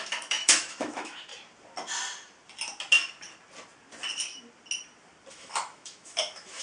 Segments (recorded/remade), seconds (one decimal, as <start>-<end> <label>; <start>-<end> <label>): 0.0-1.3 remade; 1.3-5.3 recorded; 5.3-6.6 remade